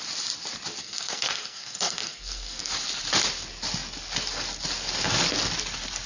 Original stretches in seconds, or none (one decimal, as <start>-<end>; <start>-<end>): 0.0-0.8; 2.7-6.1